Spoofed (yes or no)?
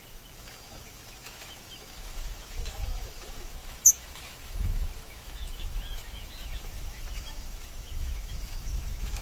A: yes